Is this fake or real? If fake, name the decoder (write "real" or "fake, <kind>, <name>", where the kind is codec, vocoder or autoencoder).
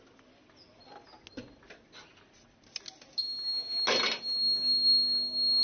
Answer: real